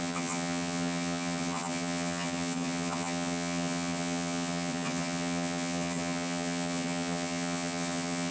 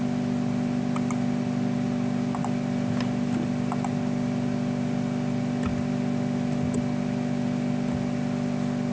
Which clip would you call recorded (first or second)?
second